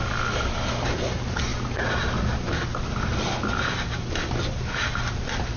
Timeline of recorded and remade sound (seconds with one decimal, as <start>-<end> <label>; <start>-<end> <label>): 0.0-5.6 recorded